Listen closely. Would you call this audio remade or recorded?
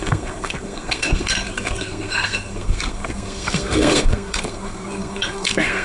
remade